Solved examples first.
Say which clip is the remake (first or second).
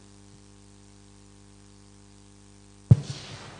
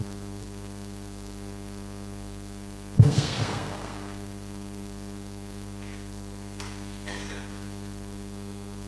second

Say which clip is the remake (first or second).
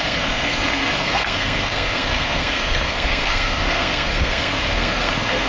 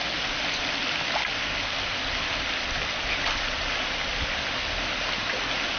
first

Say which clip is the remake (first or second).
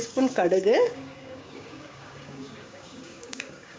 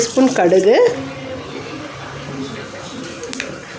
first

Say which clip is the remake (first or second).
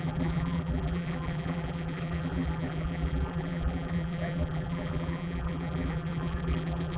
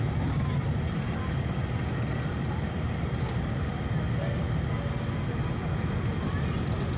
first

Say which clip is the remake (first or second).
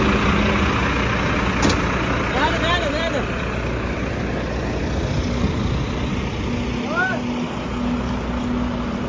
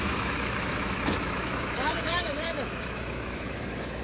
second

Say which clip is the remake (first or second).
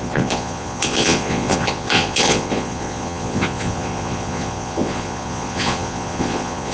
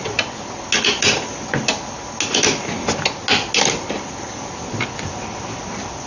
first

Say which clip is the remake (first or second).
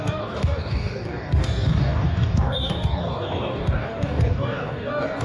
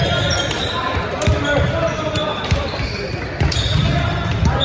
first